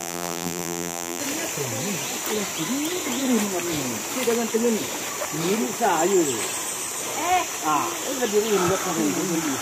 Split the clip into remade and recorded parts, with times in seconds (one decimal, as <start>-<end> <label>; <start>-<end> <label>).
0.0-1.2 remade; 1.2-9.6 recorded